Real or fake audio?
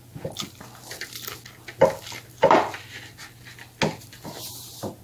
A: real